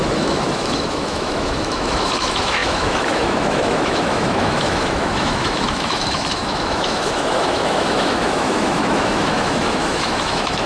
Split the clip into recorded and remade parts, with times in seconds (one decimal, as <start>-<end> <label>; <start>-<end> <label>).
0.0-10.7 remade